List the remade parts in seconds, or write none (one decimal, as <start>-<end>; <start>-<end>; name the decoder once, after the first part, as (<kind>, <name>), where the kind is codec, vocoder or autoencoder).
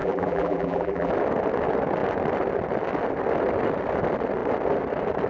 0.0-1.1 (vocoder, BigVGAN v2)